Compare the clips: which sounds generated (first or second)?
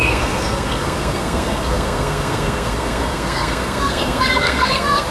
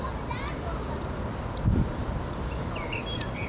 first